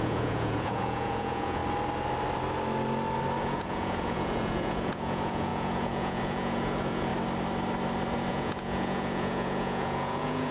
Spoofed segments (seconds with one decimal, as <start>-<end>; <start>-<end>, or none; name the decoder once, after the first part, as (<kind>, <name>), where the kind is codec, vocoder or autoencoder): 0.0-1.6 (vocoder, Vocos); 3.4-7.1; 8.3-10.5